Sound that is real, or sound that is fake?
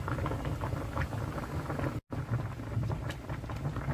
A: real